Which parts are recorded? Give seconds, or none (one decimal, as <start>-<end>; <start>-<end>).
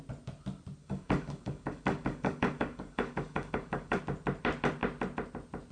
0.0-0.8; 4.0-5.7